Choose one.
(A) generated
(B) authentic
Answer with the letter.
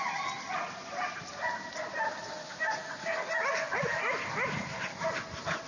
B